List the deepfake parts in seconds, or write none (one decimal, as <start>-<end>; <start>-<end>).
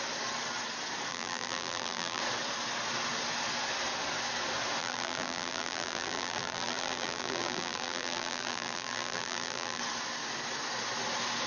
1.1-2.2; 4.8-9.8